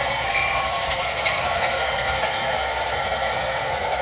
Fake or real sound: fake